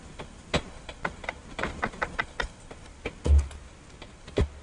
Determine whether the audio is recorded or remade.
recorded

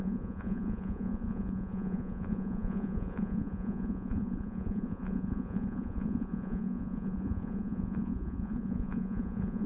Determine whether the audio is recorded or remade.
remade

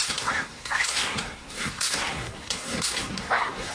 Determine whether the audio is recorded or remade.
remade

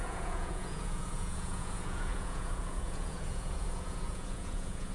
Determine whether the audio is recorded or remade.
remade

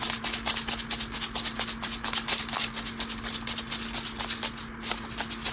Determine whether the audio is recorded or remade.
recorded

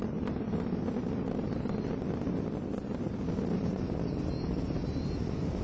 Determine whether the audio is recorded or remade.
recorded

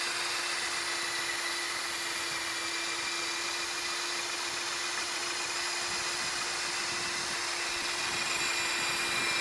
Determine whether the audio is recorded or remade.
recorded